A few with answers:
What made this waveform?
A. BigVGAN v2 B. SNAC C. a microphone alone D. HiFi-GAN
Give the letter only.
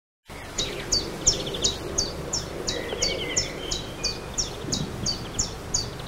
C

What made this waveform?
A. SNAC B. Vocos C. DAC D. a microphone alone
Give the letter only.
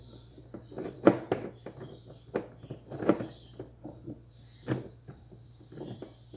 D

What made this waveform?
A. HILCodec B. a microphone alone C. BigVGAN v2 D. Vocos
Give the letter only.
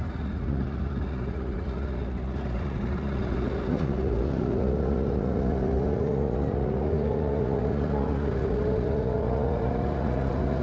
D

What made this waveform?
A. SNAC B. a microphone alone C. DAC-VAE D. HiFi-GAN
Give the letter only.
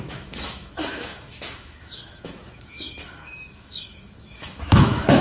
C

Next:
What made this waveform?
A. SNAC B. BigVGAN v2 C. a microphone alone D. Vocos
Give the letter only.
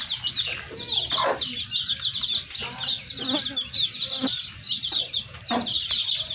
C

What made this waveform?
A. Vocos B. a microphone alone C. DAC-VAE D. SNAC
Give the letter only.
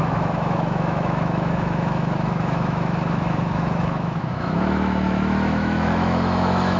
C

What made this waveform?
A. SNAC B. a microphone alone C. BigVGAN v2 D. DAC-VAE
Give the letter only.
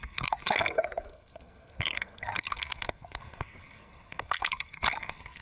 A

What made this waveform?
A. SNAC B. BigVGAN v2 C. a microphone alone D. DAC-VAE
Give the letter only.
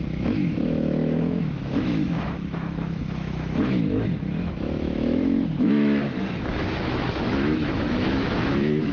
D